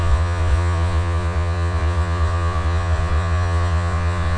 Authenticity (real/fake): fake